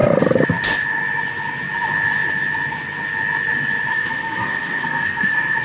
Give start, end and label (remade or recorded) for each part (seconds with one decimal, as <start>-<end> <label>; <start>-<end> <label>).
0.0-3.9 recorded; 3.9-5.6 remade